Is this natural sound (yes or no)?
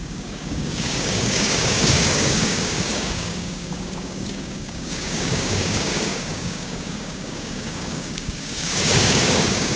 no